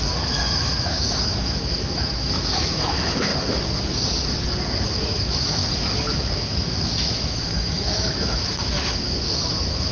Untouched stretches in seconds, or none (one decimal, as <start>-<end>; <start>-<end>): 3.3-5.0